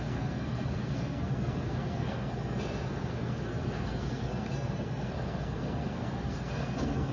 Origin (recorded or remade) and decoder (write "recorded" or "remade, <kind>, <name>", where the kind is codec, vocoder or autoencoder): remade, codec, SNAC